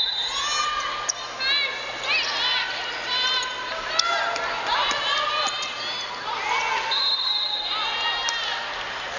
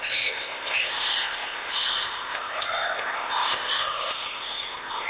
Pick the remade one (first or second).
second